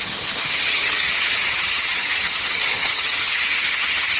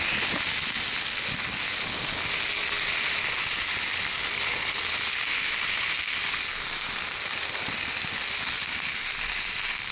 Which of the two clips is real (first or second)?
second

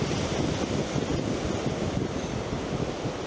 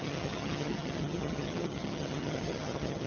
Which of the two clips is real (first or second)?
first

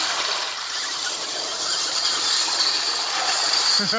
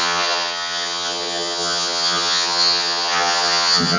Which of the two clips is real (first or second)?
first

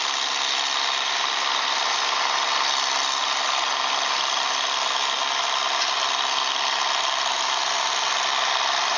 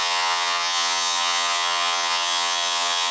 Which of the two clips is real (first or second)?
first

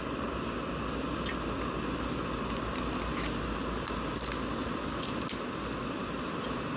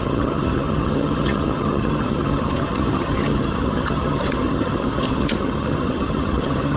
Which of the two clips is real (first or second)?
first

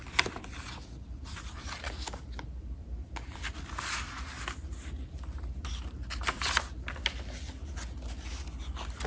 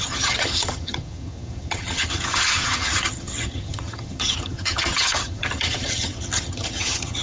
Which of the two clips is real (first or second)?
first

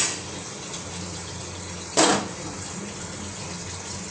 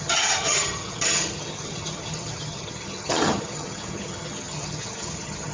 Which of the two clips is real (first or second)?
first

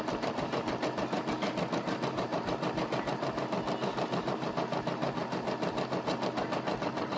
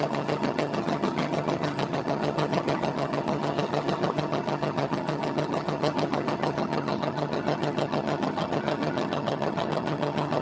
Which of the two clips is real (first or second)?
first